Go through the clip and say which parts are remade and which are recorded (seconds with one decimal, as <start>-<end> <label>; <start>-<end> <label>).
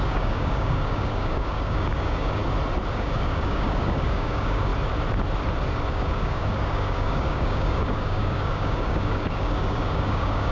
0.0-2.4 remade; 2.4-2.9 recorded; 2.9-4.7 remade; 4.7-5.9 recorded; 5.9-10.5 remade